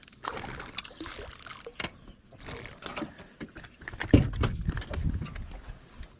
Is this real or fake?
real